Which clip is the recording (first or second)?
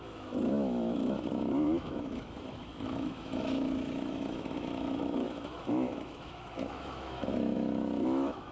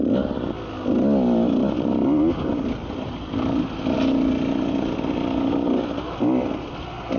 second